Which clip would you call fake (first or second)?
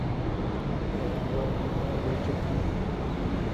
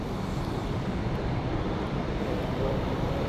second